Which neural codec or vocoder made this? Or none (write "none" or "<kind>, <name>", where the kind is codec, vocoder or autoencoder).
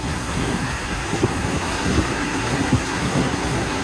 codec, SNAC